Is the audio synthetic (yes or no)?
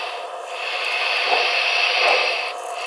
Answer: no